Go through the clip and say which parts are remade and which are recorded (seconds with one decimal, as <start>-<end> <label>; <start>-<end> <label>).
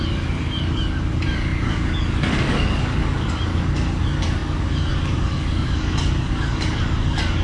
0.0-7.4 remade